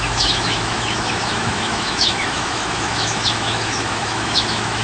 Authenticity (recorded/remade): remade